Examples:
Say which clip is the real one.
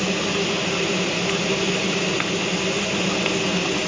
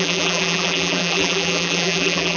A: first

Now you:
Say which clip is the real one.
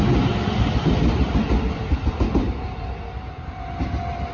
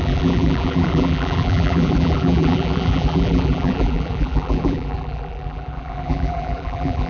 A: first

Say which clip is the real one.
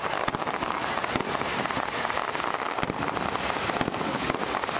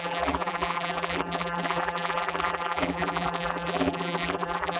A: first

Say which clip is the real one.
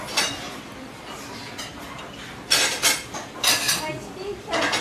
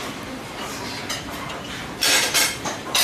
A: first